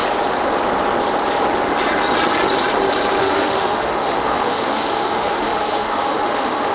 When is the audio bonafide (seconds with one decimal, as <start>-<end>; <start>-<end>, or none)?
0.0-3.2